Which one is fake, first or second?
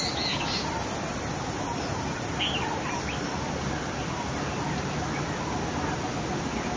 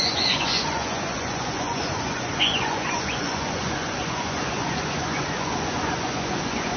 second